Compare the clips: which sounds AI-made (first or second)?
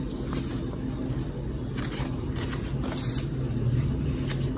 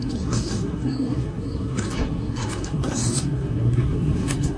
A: second